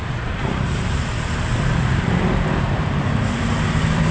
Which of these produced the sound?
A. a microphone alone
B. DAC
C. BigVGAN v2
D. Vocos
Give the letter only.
C